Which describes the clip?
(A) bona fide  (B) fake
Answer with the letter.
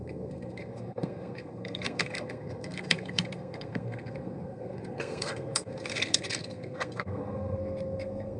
B